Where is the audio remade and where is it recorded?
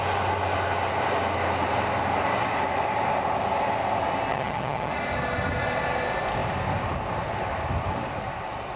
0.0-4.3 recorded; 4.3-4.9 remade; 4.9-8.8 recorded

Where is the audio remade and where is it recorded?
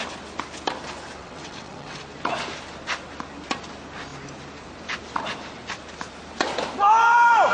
0.0-1.2 recorded; 1.2-2.0 remade; 2.0-7.5 recorded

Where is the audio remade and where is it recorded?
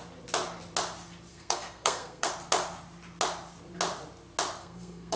0.0-1.3 recorded; 1.3-2.3 remade; 2.3-4.6 recorded; 4.6-5.2 remade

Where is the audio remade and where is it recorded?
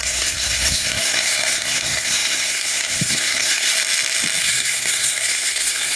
0.0-3.7 remade; 3.7-4.4 recorded; 4.4-6.0 remade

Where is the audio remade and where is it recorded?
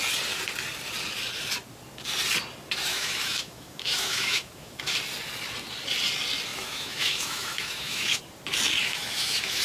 0.0-2.9 recorded; 2.9-4.8 remade; 4.8-6.5 recorded; 6.5-8.2 remade; 8.2-8.8 recorded; 8.8-9.6 remade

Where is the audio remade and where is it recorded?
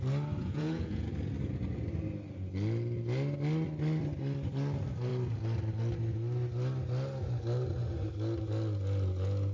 0.0-0.4 recorded; 0.4-1.1 remade; 1.1-9.5 recorded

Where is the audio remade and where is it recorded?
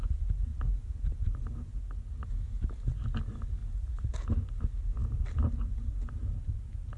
0.0-0.5 recorded; 0.5-1.8 remade; 1.8-7.0 recorded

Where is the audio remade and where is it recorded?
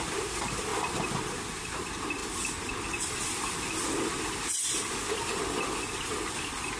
0.0-6.8 recorded